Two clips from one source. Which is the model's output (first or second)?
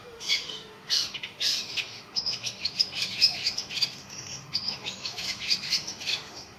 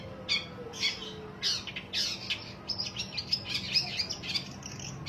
first